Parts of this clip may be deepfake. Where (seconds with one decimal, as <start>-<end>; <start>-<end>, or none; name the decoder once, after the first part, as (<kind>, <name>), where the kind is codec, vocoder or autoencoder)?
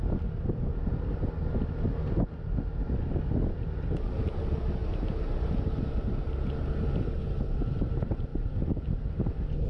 8.3-9.7 (vocoder, BigVGAN v2)